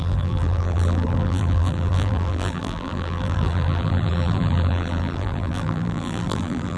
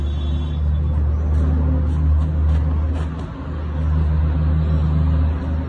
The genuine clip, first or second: second